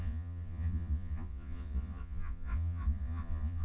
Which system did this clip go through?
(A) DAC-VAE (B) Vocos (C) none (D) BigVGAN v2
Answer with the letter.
B